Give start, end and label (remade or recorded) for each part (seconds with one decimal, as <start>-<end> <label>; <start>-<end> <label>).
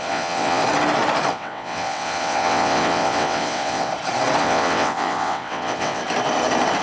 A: 0.0-0.6 remade; 0.6-1.3 recorded; 1.3-3.9 remade; 3.9-4.4 recorded; 4.4-6.0 remade; 6.0-6.8 recorded